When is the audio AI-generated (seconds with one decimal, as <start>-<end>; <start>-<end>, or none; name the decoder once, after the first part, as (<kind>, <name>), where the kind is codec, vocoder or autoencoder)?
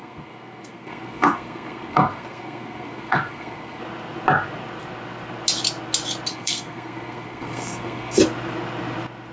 0.0-3.8 (codec, SNAC); 6.3-8.2